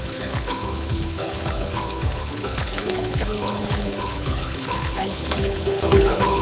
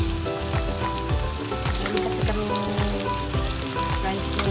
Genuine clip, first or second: second